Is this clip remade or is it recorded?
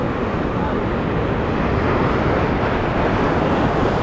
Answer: recorded